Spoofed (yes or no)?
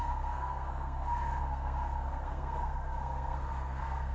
yes